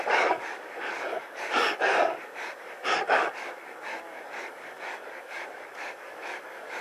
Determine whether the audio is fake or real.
fake